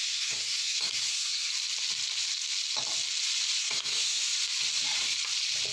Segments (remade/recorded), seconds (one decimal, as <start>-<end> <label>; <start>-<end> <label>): 0.0-1.5 remade; 1.5-3.6 recorded; 3.6-4.2 remade; 4.2-5.7 recorded